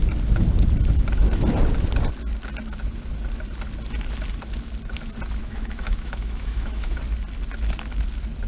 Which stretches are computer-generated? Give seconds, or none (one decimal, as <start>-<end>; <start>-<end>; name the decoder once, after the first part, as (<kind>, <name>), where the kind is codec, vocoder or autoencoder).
5.4-7.0 (autoencoder, DAC-VAE)